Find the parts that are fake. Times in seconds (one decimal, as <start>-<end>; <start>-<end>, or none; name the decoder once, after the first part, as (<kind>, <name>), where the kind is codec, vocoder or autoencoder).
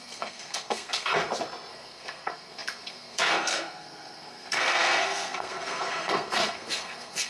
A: 0.0-1.1 (codec, SNAC); 1.7-7.3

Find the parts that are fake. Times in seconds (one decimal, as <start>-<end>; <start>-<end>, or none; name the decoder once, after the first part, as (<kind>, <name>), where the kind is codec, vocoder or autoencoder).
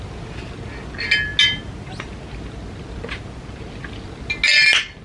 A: none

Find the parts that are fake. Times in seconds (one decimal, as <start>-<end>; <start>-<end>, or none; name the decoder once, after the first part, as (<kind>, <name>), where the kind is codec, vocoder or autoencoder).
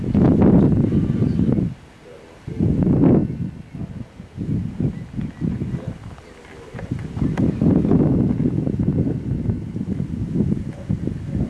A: none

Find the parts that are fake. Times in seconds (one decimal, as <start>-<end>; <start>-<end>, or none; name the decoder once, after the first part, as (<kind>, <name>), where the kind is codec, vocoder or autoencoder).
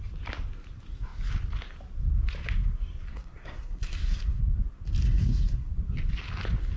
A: 3.1-4.4 (codec, SNAC); 5.0-5.7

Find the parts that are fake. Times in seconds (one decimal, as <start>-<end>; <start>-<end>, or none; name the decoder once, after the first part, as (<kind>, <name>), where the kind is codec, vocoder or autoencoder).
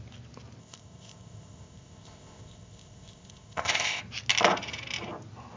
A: 0.6-4.0 (codec, ZipCodec)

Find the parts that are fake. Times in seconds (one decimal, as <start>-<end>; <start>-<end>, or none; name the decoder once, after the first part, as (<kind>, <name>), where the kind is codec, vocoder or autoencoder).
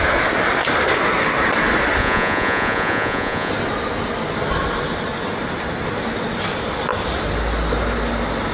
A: 2.0-3.5 (vocoder, Vocos)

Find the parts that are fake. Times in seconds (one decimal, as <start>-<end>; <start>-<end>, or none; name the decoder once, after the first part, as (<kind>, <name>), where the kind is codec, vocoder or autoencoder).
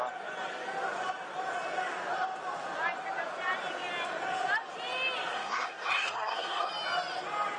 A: 5.3-6.7 (codec, SNAC)